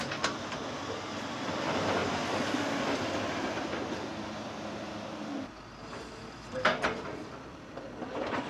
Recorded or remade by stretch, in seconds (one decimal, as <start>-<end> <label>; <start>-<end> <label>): 0.0-2.0 remade; 2.0-3.5 recorded; 3.5-8.5 remade

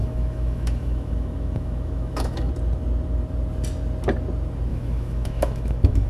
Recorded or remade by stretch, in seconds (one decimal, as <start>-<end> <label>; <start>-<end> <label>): 0.0-2.5 remade; 2.5-4.7 recorded; 4.7-6.1 remade